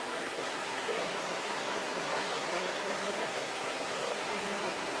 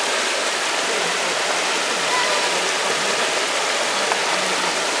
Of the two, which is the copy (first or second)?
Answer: first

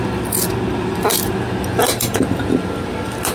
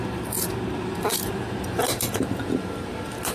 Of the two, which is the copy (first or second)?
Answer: second